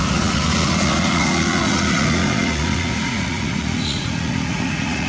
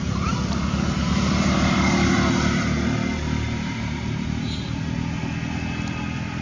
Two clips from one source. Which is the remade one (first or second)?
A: first